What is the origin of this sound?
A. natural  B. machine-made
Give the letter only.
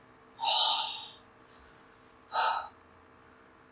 A